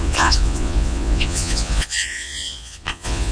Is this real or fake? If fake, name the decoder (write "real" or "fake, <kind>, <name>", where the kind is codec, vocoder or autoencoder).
fake, vocoder, Vocos